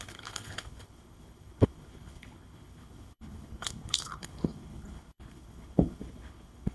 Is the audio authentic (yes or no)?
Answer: no